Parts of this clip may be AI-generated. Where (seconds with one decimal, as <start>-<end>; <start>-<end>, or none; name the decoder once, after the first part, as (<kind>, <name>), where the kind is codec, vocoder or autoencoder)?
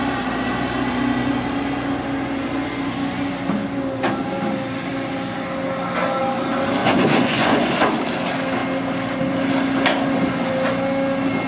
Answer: 6.8-7.7 (vocoder, Vocos)